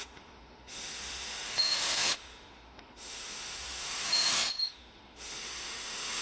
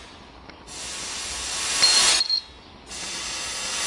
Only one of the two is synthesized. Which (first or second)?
first